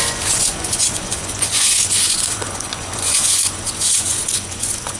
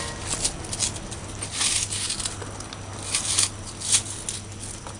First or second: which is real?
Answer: second